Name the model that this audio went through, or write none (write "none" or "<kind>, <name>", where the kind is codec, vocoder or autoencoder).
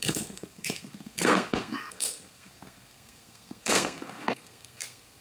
codec, SNAC